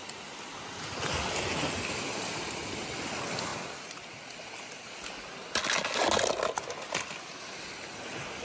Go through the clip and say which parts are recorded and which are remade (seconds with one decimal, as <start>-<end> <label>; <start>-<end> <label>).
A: 0.0-8.4 recorded